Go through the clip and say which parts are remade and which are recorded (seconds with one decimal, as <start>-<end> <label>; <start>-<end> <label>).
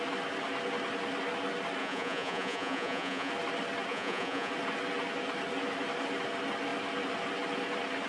0.0-1.8 recorded; 1.8-3.3 remade; 3.3-3.9 recorded; 3.9-4.5 remade; 4.5-8.1 recorded